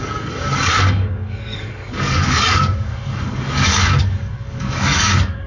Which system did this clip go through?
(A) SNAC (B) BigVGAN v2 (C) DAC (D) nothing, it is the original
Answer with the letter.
C